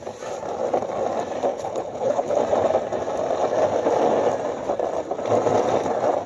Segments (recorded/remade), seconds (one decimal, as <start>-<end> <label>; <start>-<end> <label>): 0.0-1.5 recorded; 1.5-2.4 remade; 2.4-6.3 recorded